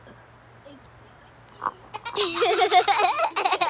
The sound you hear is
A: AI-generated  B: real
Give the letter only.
B